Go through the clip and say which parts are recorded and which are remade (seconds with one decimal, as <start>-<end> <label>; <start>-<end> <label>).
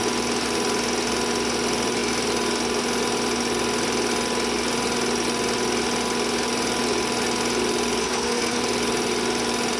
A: 0.0-8.0 recorded; 8.0-8.6 remade; 8.6-9.8 recorded